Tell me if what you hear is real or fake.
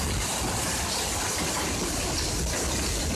real